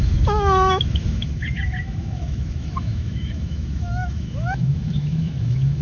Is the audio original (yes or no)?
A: no